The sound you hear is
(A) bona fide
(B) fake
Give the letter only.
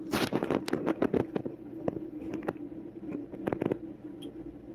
A